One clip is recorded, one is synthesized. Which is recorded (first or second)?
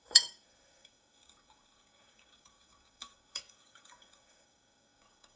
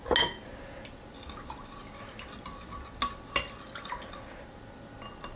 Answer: second